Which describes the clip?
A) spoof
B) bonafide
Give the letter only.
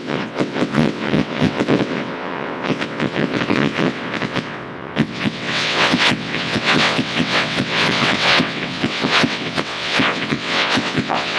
A